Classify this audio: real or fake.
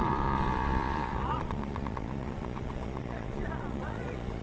fake